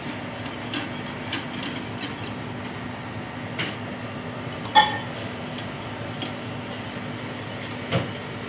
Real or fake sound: real